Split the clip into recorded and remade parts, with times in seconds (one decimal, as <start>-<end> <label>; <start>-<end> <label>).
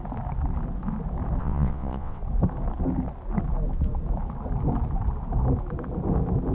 0.0-1.4 recorded; 1.4-2.2 remade; 2.2-6.5 recorded